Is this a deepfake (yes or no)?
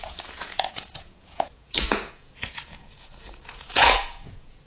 yes